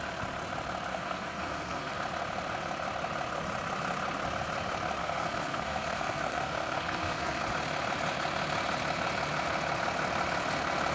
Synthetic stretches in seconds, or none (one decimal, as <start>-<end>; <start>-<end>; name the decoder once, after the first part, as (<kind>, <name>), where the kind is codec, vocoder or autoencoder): 0.9-1.9 (codec, SNAC); 5.0-7.4